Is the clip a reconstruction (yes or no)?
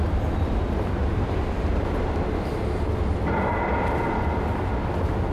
no